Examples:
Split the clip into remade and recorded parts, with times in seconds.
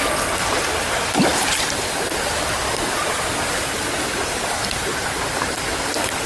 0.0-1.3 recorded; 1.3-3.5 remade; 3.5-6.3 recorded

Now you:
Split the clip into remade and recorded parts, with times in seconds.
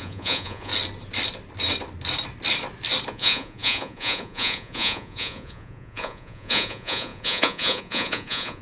0.0-0.7 remade; 0.7-3.1 recorded; 3.1-8.6 remade